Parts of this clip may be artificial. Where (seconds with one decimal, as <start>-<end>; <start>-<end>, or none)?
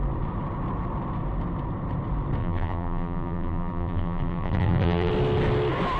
2.4-5.1